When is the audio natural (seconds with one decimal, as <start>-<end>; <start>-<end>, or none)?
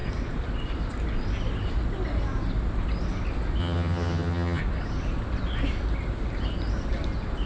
0.0-3.6; 4.6-7.5